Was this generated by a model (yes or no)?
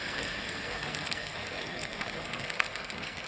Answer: yes